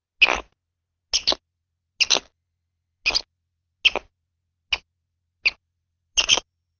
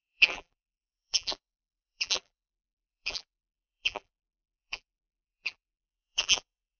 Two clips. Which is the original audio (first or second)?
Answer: first